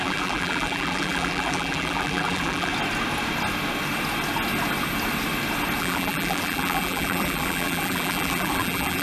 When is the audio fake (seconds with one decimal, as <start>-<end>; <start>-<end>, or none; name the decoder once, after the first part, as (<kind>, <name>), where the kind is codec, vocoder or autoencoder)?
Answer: 0.0-2.7 (vocoder, BigVGAN v2); 5.8-9.0